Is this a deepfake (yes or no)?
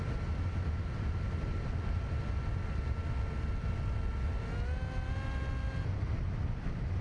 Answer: no